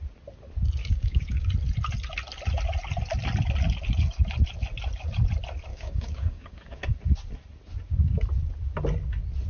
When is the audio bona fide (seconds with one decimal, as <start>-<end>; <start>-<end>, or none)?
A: 0.0-0.8; 1.5-5.7; 6.8-9.5